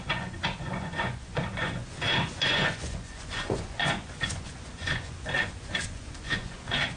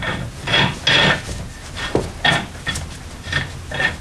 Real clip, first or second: second